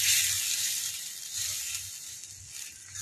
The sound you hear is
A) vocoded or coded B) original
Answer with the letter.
B